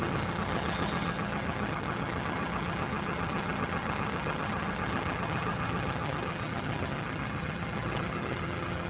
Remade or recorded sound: remade